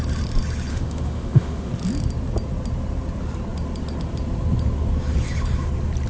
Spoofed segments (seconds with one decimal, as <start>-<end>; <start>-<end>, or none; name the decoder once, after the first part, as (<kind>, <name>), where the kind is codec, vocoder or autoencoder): 0.7-1.7 (autoencoder, DAC-VAE)